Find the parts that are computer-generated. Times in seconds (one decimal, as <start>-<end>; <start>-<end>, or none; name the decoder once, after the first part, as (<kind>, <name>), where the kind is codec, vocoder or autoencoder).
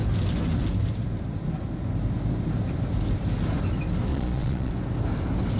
4.1-4.7 (vocoder, Vocos)